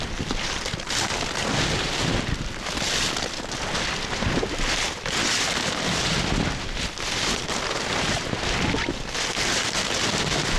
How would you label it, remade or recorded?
recorded